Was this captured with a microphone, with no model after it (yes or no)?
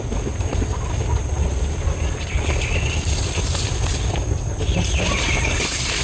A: yes